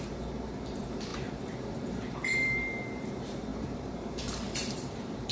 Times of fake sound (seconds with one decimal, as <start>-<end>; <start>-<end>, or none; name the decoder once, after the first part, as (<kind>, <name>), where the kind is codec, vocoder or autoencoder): 0.0-5.3 (vocoder, BigVGAN v2)